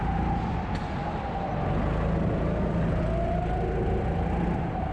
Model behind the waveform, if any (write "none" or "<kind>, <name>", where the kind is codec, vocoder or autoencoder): none